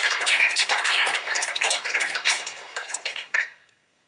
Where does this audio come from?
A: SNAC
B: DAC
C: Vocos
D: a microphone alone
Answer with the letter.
A